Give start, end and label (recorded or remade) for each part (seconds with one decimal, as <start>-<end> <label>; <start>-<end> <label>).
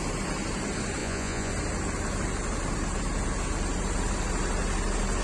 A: 0.0-1.0 recorded; 1.0-1.5 remade; 1.5-5.2 recorded